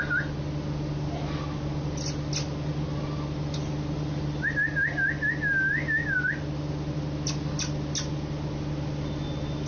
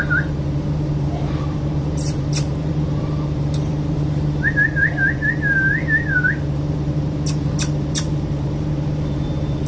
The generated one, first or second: second